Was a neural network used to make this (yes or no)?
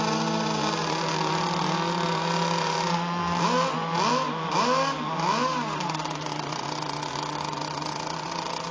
no